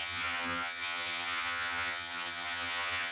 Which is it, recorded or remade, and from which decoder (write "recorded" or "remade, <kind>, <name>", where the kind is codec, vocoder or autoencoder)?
remade, vocoder, HiFi-GAN